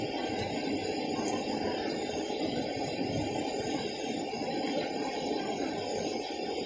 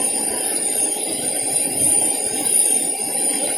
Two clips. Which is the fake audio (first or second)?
second